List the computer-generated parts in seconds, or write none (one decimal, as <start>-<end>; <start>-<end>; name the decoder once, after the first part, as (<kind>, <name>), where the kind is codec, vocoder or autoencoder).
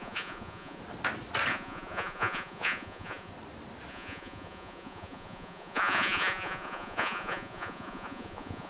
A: 0.0-0.8 (vocoder, Vocos); 1.5-3.3; 3.9-8.7